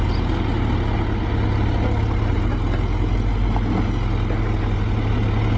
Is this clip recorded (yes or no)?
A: yes